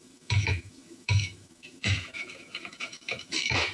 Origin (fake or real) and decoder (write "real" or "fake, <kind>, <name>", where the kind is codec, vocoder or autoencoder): fake, autoencoder, DAC-VAE